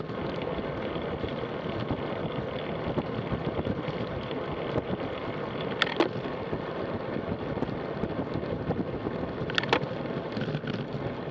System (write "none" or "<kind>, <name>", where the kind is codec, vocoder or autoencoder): none